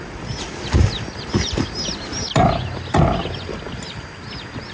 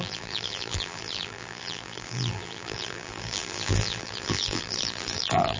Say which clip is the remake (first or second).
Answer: second